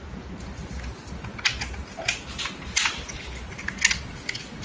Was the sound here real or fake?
real